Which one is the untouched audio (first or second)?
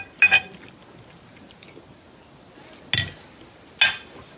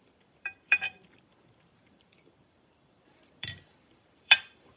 first